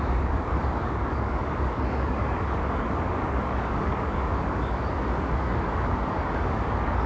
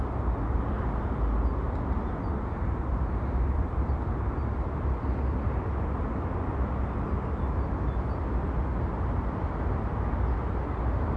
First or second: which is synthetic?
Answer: first